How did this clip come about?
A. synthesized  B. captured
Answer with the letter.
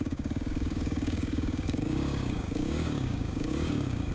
A